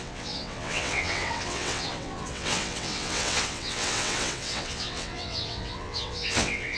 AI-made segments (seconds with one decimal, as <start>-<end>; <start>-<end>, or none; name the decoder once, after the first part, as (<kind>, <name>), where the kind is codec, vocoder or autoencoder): 0.0-6.8 (vocoder, WaveNeXt)